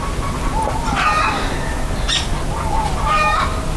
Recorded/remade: recorded